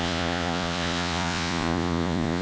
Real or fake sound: fake